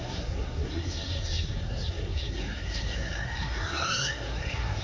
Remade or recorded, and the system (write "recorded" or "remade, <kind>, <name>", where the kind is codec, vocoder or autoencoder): remade, codec, SNAC